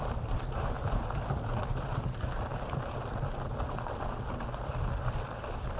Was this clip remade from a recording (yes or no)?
no